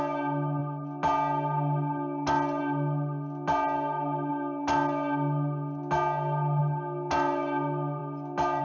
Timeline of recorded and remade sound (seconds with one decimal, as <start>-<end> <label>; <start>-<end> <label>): 0.0-8.6 recorded